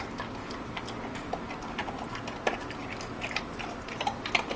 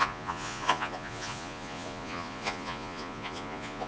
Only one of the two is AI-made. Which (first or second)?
second